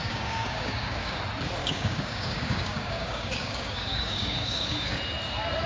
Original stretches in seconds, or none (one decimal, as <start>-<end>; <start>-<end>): 1.2-1.6; 5.0-5.7